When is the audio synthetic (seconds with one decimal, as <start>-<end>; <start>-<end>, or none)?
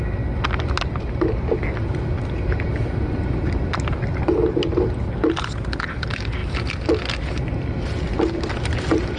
none